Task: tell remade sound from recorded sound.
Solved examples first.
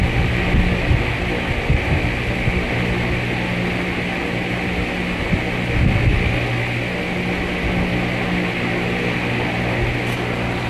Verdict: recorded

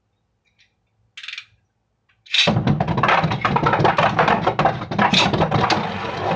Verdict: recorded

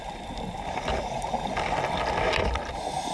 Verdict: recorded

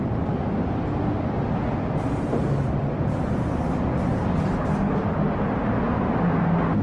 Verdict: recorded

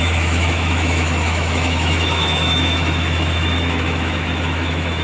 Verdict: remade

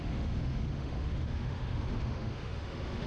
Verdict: remade